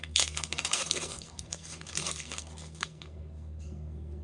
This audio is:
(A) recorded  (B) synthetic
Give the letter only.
B